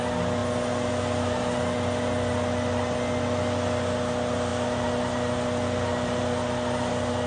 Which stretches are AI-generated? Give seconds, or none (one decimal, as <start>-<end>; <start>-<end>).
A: none